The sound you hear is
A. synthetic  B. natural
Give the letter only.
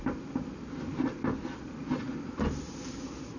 B